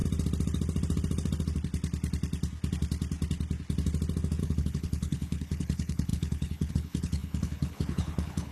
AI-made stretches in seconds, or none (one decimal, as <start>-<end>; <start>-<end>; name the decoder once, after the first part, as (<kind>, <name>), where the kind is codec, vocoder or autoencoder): 4.4-8.5 (codec, HILCodec)